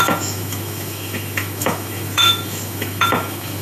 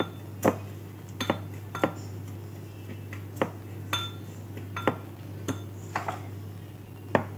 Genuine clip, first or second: second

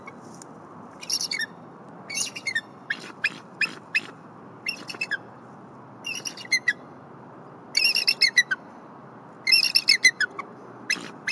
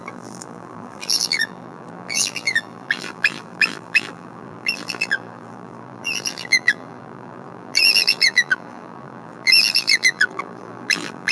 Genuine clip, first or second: first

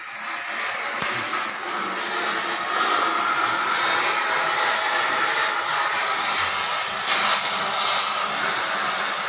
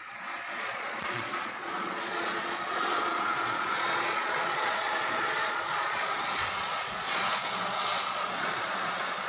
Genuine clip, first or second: first